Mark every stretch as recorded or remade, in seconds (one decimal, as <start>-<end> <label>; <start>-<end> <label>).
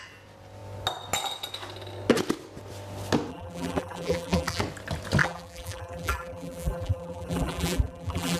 0.0-3.3 recorded; 3.3-4.6 remade; 4.6-5.2 recorded; 5.2-8.4 remade